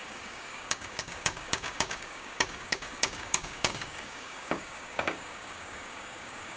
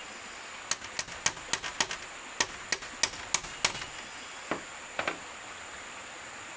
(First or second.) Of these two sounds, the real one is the second